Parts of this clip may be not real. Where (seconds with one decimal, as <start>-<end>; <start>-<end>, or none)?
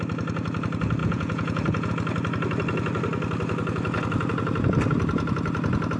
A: 1.0-1.9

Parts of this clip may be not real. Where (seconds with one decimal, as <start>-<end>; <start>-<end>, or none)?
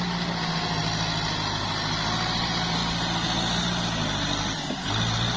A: none